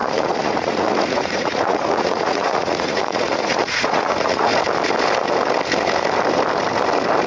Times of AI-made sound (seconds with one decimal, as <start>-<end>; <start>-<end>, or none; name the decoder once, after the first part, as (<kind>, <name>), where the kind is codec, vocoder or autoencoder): 0.0-4.5 (vocoder, Vocos)